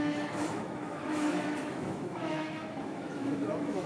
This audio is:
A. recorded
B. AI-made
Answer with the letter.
B